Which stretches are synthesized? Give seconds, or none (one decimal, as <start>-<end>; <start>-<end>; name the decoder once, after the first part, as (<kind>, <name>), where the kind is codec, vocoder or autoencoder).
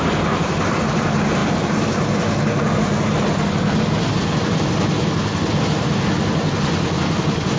none